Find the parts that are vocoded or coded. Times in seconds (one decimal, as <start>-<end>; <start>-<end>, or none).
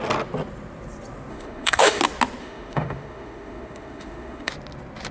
1.3-2.0; 2.4-4.5